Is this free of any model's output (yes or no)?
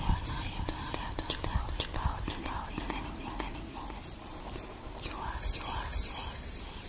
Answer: no